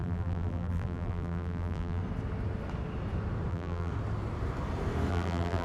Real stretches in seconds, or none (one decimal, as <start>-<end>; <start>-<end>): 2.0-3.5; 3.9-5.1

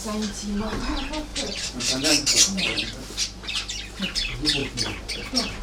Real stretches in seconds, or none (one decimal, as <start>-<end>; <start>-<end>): 0.0-1.3; 4.0-5.6

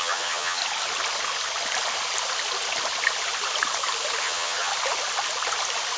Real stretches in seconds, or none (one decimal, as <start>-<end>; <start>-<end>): 0.6-4.2; 4.7-6.0

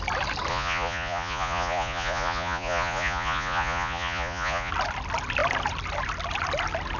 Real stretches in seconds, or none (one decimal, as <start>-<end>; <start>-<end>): 0.0-0.5; 4.7-7.0

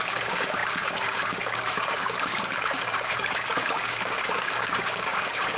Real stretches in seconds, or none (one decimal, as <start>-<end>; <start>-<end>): none

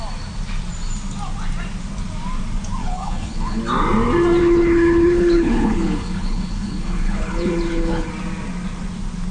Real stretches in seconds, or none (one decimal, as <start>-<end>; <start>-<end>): 0.0-2.8; 3.6-4.4; 8.1-9.3

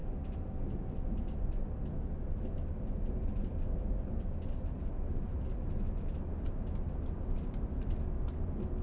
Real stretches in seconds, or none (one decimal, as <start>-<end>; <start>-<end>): 0.0-8.8